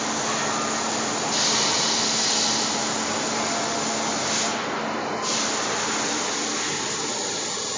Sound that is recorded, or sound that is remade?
recorded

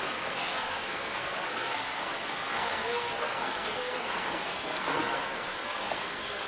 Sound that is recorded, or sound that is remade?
remade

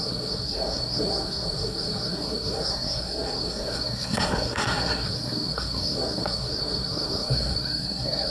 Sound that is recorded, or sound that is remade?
remade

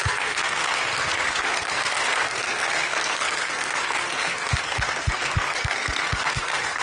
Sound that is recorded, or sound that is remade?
remade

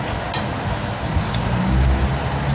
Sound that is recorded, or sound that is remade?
recorded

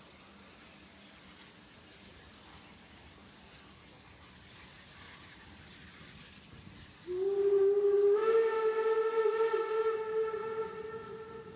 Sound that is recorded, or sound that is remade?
recorded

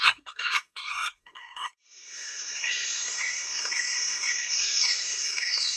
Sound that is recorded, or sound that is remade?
remade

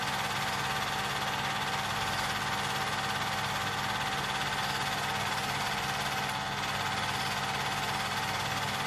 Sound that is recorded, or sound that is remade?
recorded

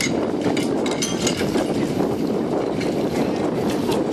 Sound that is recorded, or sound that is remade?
recorded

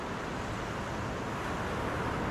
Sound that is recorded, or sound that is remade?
recorded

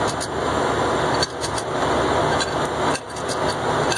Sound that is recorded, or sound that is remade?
recorded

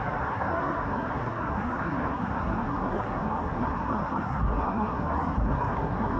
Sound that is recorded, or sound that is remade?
remade